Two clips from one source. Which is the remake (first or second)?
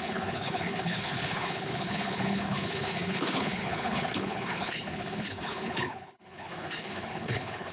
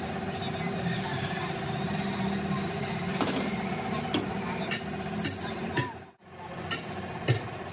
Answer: first